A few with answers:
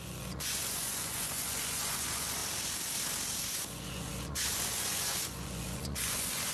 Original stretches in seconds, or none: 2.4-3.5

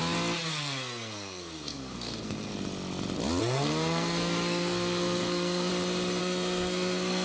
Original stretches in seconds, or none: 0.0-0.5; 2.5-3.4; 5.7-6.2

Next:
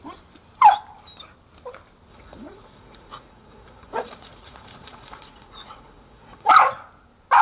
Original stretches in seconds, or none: 0.0-2.1; 6.5-7.4